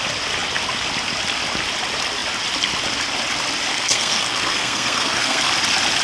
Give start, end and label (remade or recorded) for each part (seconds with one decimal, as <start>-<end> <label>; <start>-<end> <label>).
0.0-3.7 recorded; 3.7-5.5 remade; 5.5-6.0 recorded